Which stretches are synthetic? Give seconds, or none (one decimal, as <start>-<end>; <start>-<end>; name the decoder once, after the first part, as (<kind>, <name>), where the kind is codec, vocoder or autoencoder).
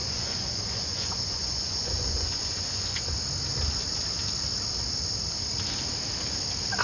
0.0-3.1 (vocoder, Vocos)